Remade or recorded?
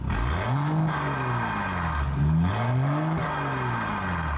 recorded